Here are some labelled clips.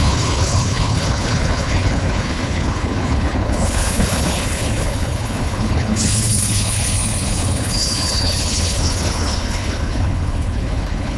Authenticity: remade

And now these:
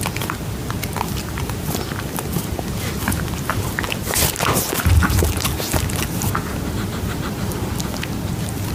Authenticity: recorded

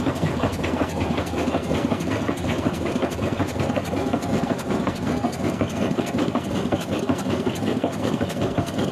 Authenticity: remade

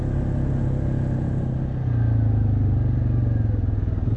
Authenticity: recorded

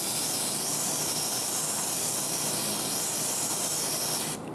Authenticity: recorded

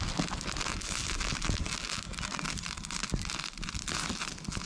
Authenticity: recorded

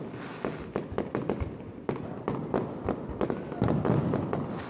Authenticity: recorded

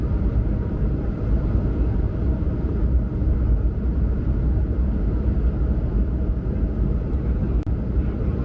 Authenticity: remade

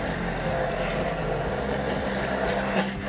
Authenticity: recorded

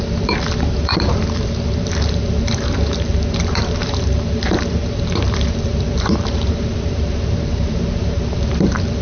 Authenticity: remade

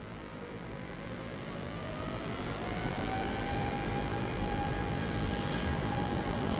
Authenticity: remade